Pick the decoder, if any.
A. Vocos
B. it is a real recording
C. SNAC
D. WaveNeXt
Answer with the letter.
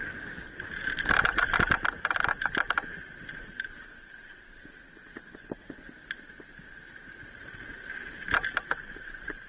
B